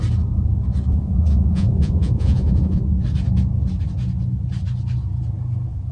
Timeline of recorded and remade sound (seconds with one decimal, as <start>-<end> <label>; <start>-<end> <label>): 0.0-0.9 recorded; 0.9-2.8 remade; 2.8-5.9 recorded

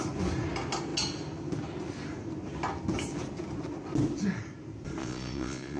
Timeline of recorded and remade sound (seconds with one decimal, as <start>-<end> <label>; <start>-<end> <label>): 0.0-5.0 recorded; 5.0-5.8 remade

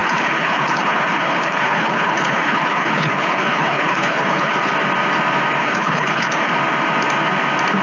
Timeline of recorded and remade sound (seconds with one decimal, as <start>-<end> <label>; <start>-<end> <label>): 0.0-4.7 remade; 4.7-5.6 recorded; 5.6-6.5 remade; 6.5-7.8 recorded

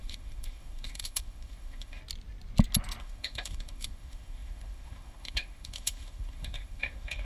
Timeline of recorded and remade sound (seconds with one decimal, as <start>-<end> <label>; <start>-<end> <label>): 0.0-2.0 remade; 2.0-3.0 recorded; 3.0-7.2 remade

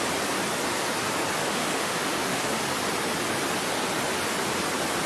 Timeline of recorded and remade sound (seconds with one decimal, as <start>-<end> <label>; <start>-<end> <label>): 0.0-1.4 recorded; 1.4-2.6 remade; 2.6-5.1 recorded

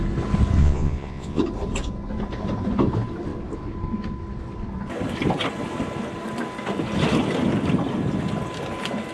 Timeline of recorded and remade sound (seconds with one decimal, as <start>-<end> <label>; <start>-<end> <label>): 0.0-0.6 recorded; 0.6-1.4 remade; 1.4-9.1 recorded